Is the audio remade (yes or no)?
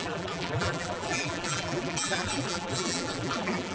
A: yes